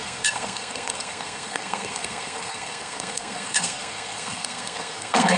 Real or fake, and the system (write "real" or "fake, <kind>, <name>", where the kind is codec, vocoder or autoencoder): fake, codec, SNAC